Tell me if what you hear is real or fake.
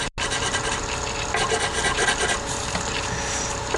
real